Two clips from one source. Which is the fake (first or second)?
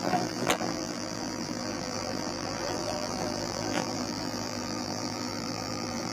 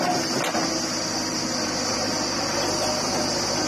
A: first